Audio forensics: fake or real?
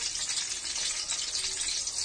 real